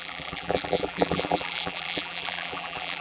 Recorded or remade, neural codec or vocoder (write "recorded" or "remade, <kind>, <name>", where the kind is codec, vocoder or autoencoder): remade, vocoder, BigVGAN v2